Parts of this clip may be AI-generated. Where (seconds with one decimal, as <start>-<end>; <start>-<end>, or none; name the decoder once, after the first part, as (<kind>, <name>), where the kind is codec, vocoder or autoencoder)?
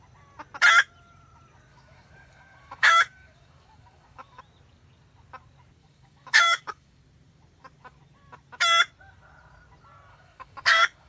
1.7-4.4 (codec, DAC); 5.8-7.0; 10.1-11.1